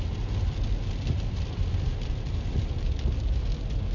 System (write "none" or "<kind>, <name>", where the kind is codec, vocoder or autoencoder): none